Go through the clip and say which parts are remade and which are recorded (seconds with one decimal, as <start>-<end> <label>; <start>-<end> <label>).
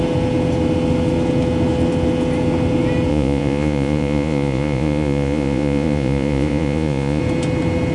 0.0-3.1 recorded; 3.1-7.2 remade; 7.2-7.9 recorded